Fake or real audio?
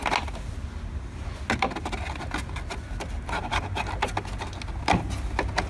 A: real